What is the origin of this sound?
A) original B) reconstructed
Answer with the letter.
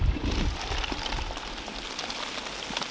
A